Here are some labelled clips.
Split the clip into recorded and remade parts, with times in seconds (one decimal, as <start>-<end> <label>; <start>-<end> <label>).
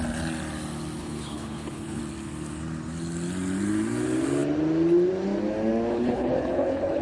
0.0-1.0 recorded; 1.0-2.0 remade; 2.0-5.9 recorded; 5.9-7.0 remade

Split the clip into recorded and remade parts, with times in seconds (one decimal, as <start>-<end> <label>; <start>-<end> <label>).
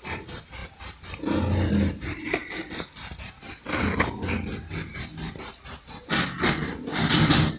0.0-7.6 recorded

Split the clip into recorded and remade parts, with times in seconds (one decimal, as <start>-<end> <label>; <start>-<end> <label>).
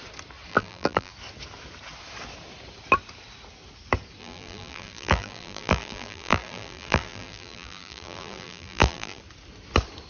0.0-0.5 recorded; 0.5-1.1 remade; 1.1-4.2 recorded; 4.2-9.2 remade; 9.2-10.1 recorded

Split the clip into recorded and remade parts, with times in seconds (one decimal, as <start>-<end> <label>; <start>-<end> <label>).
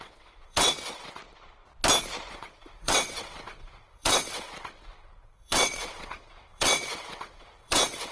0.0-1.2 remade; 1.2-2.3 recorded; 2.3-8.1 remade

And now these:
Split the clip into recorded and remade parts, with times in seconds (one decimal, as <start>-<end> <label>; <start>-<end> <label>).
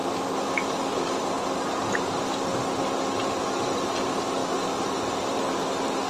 0.0-6.1 recorded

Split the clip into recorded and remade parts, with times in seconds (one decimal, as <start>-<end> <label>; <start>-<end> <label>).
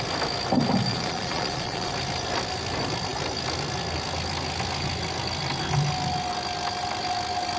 0.0-0.9 recorded; 0.9-1.9 remade; 1.9-7.6 recorded